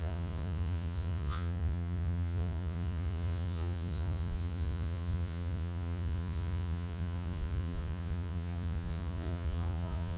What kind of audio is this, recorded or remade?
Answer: remade